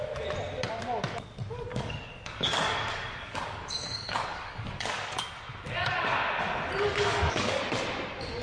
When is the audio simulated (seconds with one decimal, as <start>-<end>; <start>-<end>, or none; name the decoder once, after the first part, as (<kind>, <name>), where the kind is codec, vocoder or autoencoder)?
1.7-5.2 (codec, DAC); 6.9-7.6